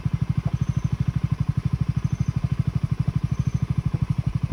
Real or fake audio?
real